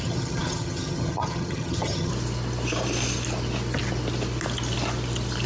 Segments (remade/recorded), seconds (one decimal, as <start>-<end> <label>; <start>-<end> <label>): 0.0-2.1 remade; 2.1-5.5 recorded